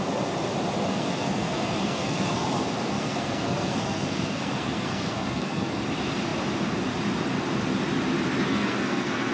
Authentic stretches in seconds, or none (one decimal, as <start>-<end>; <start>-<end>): 0.0-0.9; 5.8-8.5